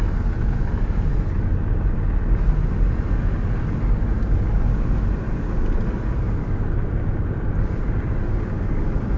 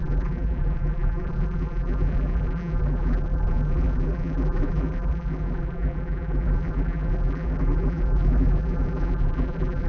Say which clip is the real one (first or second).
first